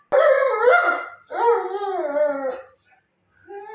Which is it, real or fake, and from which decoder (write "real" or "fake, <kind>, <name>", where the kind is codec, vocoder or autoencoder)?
real